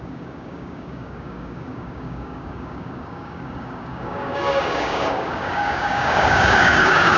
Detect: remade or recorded remade